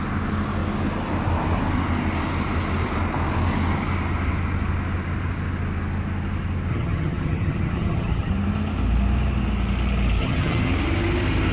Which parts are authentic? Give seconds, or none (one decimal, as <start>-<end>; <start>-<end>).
0.0-6.7; 8.3-10.2; 10.7-11.5